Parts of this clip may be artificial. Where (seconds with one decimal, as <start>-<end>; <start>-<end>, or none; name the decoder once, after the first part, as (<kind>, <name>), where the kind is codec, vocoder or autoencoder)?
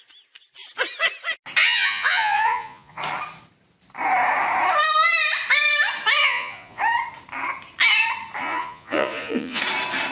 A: 1.6-3.0 (vocoder, Vocos); 6.2-6.8; 8.4-9.6